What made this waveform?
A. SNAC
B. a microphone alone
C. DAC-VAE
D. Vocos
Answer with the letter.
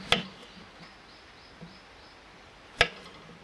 B